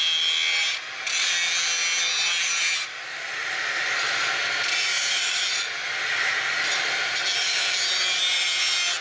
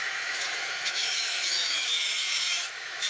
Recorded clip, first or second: first